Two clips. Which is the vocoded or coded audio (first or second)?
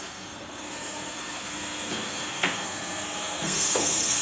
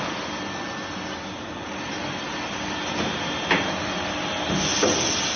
first